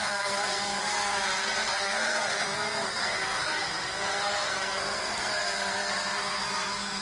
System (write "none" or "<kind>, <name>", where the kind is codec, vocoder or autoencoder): codec, SNAC